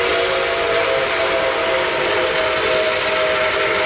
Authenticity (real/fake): real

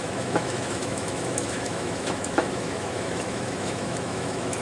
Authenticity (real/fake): fake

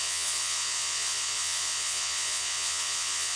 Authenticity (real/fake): fake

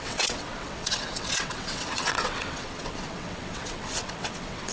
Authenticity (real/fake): fake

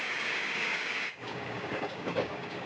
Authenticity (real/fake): fake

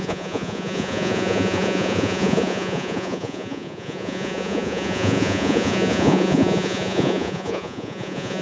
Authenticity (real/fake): fake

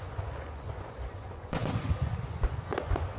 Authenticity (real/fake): fake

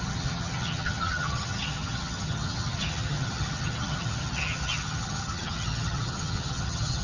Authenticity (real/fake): fake